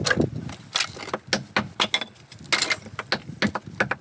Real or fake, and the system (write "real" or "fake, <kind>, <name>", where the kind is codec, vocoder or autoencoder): real